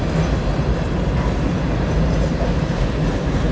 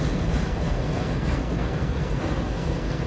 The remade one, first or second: second